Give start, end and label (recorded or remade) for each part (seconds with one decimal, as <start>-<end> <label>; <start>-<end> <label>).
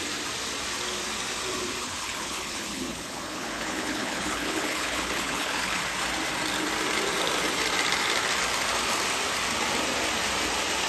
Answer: 0.0-1.8 recorded; 1.8-5.8 remade; 5.8-10.9 recorded